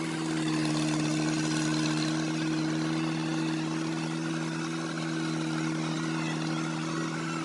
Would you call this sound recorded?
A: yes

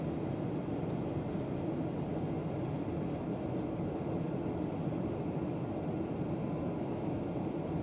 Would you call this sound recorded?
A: yes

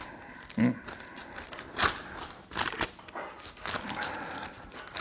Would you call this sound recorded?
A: yes